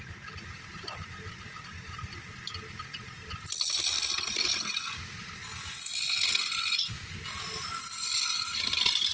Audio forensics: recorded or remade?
recorded